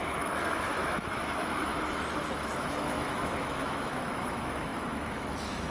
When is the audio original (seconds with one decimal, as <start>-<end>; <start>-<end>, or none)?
1.7-2.3